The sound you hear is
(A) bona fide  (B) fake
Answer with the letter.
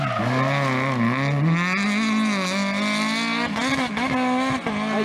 A